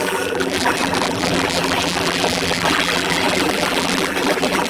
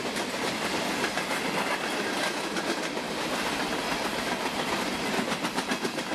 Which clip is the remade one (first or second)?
first